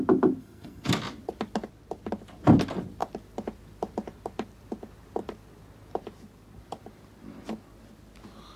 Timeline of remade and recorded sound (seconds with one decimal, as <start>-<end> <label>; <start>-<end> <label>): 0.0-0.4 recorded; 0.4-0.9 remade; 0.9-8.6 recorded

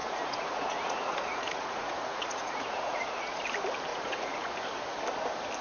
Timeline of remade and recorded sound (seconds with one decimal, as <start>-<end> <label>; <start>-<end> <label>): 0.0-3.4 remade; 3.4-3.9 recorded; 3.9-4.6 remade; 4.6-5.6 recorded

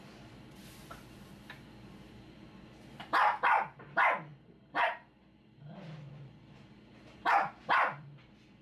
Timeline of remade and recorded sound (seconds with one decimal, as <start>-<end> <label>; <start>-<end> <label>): 0.0-7.2 recorded; 7.2-8.2 remade; 8.2-8.6 recorded

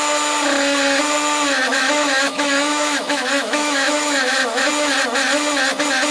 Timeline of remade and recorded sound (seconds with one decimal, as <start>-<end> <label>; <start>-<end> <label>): 0.0-1.7 recorded; 1.7-4.7 remade; 4.7-6.1 recorded